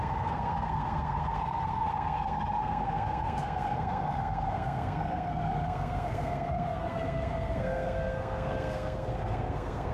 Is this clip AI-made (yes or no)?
yes